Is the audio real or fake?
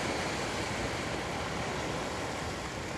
real